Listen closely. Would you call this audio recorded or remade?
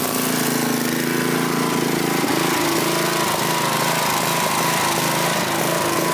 recorded